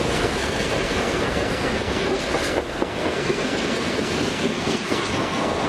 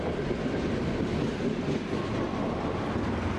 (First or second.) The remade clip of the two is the first